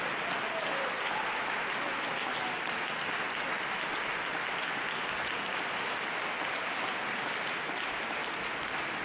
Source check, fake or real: real